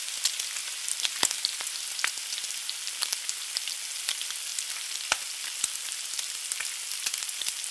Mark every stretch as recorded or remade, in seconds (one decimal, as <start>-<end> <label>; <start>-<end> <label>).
0.0-7.7 recorded

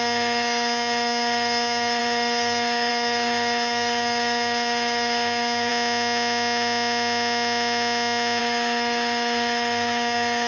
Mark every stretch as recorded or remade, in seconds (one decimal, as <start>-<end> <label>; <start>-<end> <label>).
0.0-5.7 remade; 5.7-8.4 recorded; 8.4-10.5 remade

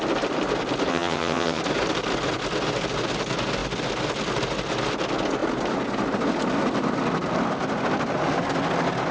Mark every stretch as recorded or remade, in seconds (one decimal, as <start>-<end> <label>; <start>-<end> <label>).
0.0-0.9 recorded; 0.9-1.6 remade; 1.6-9.1 recorded

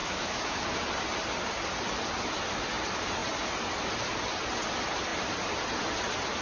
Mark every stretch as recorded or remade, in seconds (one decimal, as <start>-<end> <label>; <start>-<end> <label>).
0.0-0.6 remade; 0.6-6.4 recorded

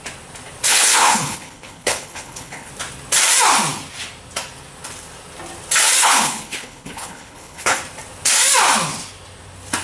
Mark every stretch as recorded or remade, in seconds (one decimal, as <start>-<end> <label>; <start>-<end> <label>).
0.0-0.7 recorded; 0.7-2.7 remade; 2.7-6.0 recorded; 6.0-7.8 remade; 7.8-9.8 recorded